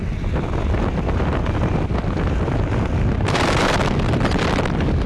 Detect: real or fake real